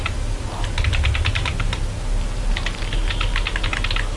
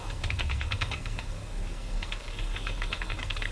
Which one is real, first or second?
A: first